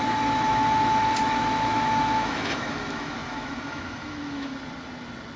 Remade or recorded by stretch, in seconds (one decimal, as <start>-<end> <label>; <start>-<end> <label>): 0.0-4.5 remade; 4.5-5.4 recorded